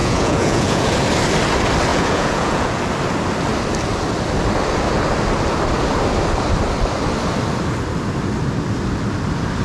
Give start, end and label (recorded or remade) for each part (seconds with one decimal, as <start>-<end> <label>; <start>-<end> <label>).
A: 0.0-0.9 remade; 0.9-1.9 recorded; 1.9-2.8 remade; 2.8-9.6 recorded